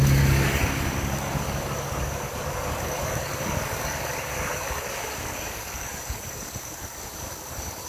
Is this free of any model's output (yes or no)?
no